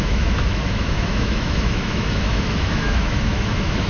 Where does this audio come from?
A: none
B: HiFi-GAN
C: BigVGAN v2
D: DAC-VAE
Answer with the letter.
D